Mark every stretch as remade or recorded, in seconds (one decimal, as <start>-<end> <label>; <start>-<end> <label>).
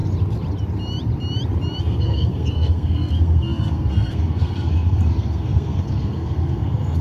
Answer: 0.0-1.8 recorded; 1.8-7.0 remade